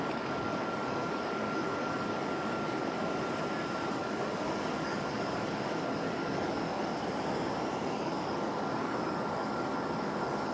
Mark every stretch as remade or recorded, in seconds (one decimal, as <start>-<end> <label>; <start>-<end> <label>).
0.0-3.0 remade; 3.0-3.9 recorded; 3.9-6.9 remade; 6.9-7.8 recorded; 7.8-10.5 remade